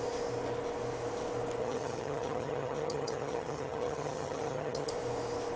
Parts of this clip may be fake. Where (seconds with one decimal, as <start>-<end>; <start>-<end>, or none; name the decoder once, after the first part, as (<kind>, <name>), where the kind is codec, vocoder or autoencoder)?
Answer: 1.6-4.9 (vocoder, HiFi-GAN)